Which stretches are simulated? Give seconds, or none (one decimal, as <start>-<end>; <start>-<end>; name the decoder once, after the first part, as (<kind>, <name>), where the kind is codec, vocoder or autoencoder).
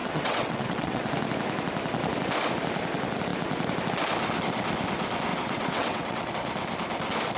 0.0-1.1 (vocoder, WaveNeXt); 5.3-6.3